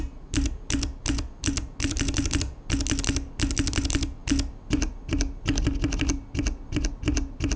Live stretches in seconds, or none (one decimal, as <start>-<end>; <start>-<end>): 0.0-7.6